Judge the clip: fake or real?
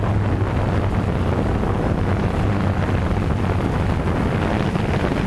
real